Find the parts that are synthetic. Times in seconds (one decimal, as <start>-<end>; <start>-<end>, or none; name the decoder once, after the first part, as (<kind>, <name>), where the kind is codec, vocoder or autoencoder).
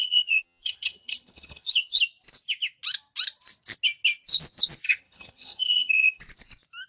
0.0-2.0 (vocoder, HiFi-GAN); 4.9-6.2